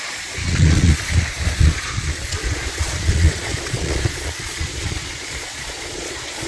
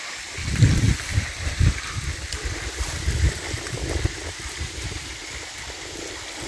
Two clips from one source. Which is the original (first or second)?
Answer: second